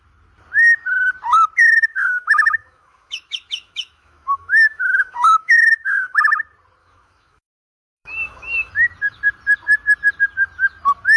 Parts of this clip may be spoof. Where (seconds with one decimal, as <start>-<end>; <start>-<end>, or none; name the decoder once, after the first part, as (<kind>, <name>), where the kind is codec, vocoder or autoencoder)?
1.6-6.2 (autoencoder, DAC-VAE); 6.8-8.7